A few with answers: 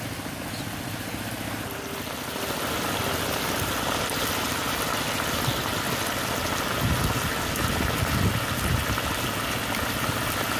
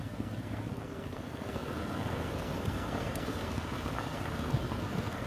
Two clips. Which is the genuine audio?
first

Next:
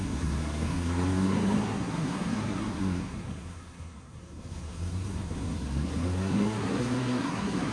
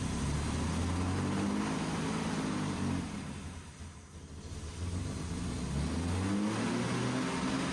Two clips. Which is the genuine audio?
second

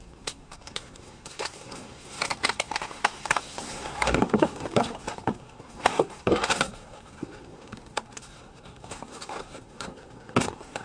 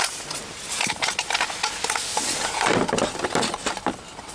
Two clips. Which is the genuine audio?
second